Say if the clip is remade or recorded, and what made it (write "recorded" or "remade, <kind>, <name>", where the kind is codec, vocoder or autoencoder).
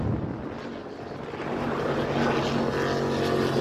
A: recorded